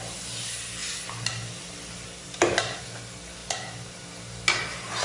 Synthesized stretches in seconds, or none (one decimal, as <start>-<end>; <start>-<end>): none